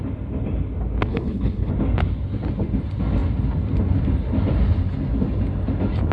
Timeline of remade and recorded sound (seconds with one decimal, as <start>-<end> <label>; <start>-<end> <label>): 0.0-1.1 recorded; 1.1-1.7 remade; 1.7-6.1 recorded